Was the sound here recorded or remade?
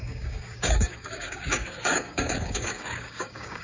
remade